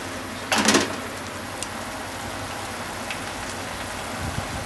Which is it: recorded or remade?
recorded